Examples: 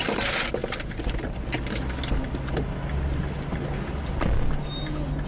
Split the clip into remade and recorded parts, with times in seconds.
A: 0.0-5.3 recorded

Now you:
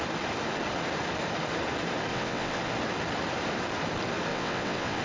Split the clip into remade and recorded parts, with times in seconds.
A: 0.0-2.1 recorded; 2.1-2.6 remade; 2.6-4.3 recorded; 4.3-5.0 remade